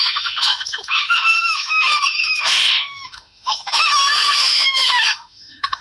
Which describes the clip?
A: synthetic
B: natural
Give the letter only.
A